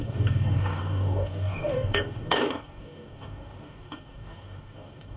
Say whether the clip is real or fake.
fake